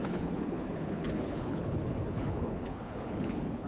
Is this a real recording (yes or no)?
no